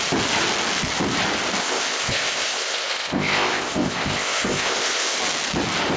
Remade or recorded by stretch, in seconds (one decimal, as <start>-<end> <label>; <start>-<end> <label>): 0.0-1.6 recorded; 1.6-5.2 remade; 5.2-6.0 recorded

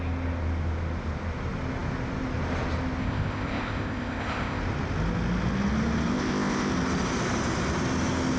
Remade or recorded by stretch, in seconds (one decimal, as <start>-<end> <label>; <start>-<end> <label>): 0.0-3.0 recorded; 3.0-4.6 remade; 4.6-6.1 recorded; 6.1-6.7 remade; 6.7-8.4 recorded

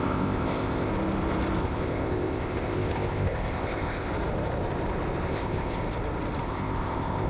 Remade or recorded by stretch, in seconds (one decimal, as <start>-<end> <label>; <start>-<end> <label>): 0.0-0.9 remade; 0.9-1.6 recorded; 1.6-4.1 remade; 4.1-5.3 recorded; 5.3-5.8 remade; 5.8-6.4 recorded; 6.4-7.3 remade

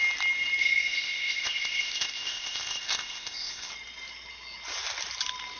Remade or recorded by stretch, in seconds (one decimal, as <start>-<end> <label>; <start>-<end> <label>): 0.0-0.6 recorded; 0.6-3.7 remade; 3.7-5.6 recorded

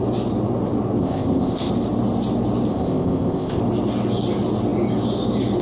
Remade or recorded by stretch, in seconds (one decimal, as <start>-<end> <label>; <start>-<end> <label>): 0.0-1.0 recorded; 1.0-1.7 remade; 1.7-2.7 recorded; 2.7-3.6 remade; 3.6-5.6 recorded

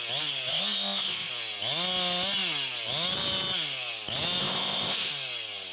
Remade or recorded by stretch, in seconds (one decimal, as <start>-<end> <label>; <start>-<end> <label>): 0.0-0.5 recorded; 0.5-1.3 remade; 1.3-4.4 recorded; 4.4-5.1 remade; 5.1-5.7 recorded